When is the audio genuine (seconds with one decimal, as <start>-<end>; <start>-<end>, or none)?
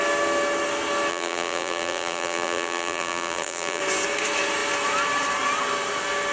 0.0-1.1; 3.8-6.3